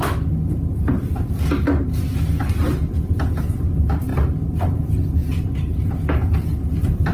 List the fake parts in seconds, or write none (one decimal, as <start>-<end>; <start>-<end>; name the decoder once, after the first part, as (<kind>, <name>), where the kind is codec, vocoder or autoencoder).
5.2-5.8 (vocoder, BigVGAN v2)